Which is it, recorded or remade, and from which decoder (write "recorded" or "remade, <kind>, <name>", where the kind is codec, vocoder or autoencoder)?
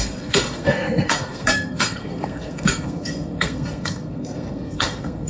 remade, codec, SNAC